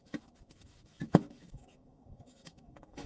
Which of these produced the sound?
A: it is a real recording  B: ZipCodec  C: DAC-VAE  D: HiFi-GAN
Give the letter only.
C